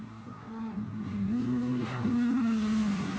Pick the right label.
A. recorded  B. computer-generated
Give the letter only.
B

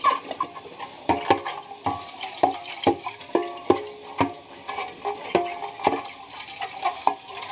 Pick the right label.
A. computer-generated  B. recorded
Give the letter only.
B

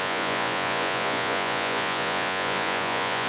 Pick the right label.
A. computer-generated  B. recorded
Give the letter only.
A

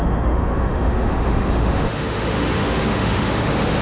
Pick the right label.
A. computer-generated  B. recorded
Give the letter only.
A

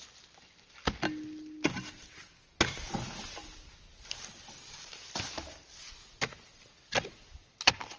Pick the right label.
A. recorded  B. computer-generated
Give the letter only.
A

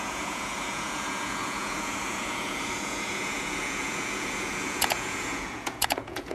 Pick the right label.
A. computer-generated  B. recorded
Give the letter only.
A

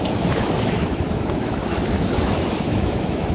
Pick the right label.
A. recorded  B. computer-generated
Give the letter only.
B